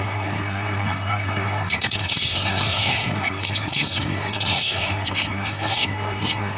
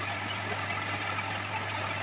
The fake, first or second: first